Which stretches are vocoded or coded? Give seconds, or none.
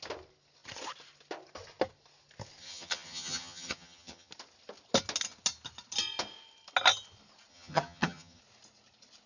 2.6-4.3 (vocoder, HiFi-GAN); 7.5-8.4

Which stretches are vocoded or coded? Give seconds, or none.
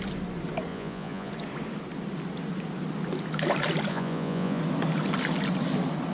0.7-1.3 (vocoder, Vocos); 3.9-4.6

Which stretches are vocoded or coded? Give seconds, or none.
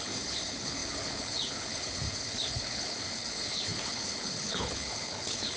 0.0-5.6 (codec, HILCodec)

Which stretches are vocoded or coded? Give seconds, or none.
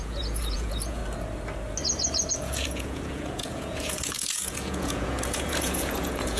0.0-1.0 (vocoder, Vocos); 2.3-6.4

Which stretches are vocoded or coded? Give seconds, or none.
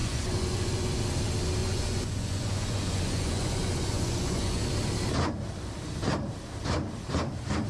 0.0-1.0 (vocoder, Vocos); 1.6-4.6